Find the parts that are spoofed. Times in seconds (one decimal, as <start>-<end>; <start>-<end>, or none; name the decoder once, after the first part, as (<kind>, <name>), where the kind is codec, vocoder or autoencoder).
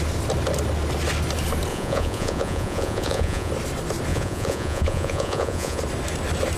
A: 1.7-3.5 (vocoder, Vocos); 4.1-5.8